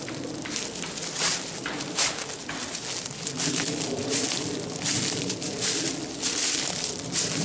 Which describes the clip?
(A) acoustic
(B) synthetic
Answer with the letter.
A